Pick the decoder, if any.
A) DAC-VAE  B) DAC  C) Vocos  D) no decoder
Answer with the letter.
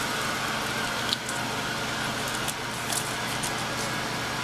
D